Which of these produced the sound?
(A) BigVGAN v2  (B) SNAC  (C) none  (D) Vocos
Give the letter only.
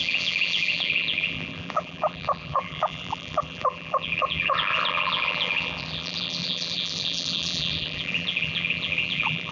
A